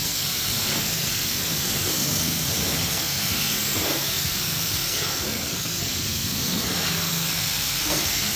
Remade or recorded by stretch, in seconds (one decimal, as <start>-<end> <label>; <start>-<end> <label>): 0.0-8.4 remade

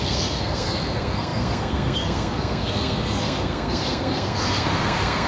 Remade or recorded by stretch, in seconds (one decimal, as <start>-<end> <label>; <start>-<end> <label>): 0.0-5.3 remade

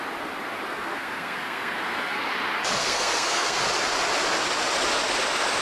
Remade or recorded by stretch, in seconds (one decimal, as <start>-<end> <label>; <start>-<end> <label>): 0.0-0.7 recorded; 0.7-2.2 remade; 2.2-2.8 recorded; 2.8-3.6 remade; 3.6-5.6 recorded

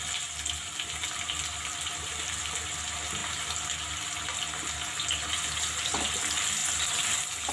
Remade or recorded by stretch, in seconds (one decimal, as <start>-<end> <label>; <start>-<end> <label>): 0.0-7.5 recorded

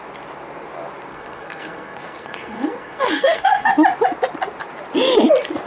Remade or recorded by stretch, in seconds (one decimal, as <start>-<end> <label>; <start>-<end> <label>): 0.0-1.1 recorded; 1.1-3.7 remade; 3.7-5.7 recorded